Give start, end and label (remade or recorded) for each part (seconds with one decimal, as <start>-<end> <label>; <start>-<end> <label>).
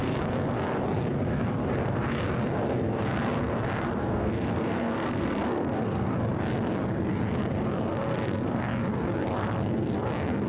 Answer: 0.0-4.0 recorded; 4.0-6.1 remade; 6.1-7.9 recorded; 7.9-8.6 remade; 8.6-10.5 recorded